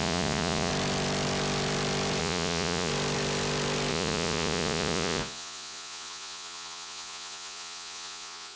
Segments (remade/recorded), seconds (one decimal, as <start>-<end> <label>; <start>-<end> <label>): 0.0-0.7 remade; 0.7-2.2 recorded; 2.2-2.9 remade; 2.9-3.9 recorded; 3.9-8.6 remade